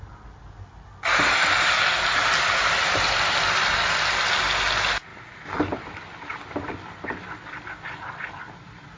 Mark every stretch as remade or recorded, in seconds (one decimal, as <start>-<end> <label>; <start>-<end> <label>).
0.0-9.0 recorded